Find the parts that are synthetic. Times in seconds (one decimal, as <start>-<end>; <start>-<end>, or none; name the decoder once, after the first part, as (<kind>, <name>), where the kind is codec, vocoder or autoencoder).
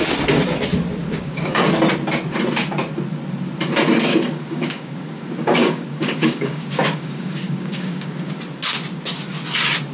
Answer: 1.0-1.6 (codec, DAC); 4.1-8.3